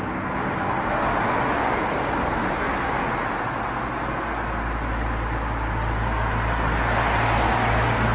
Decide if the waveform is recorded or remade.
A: recorded